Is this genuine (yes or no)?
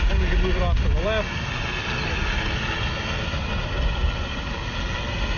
yes